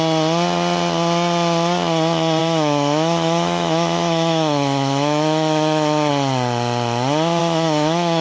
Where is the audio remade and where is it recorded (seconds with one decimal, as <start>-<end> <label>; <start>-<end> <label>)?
0.0-2.4 recorded; 2.4-6.1 remade; 6.1-7.4 recorded; 7.4-8.2 remade